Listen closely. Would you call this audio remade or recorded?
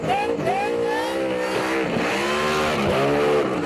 recorded